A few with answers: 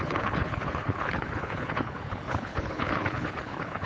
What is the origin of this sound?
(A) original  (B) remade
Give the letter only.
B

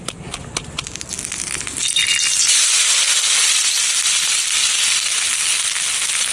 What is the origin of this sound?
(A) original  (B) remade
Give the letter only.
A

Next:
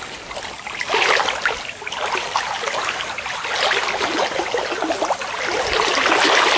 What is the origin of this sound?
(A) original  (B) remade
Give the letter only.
A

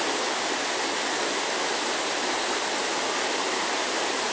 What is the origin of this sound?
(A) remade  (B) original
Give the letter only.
B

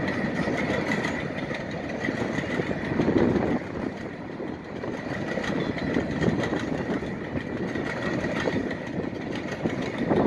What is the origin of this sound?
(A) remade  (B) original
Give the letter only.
B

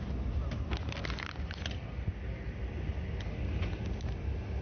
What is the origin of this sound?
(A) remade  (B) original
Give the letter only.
B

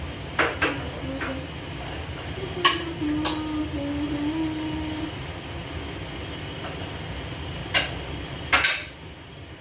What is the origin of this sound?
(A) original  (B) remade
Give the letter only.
A